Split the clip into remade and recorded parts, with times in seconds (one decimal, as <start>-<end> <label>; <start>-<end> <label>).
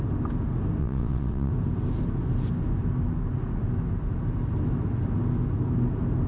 0.0-0.8 recorded; 0.8-1.5 remade; 1.5-6.3 recorded